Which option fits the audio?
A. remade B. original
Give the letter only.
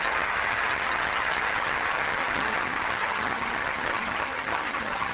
A